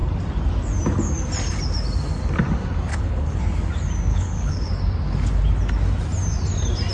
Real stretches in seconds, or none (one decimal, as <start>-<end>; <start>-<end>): 0.0-2.9; 3.4-4.1; 4.7-6.9